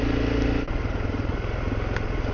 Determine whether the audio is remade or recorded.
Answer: recorded